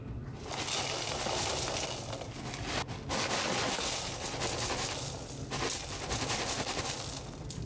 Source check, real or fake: real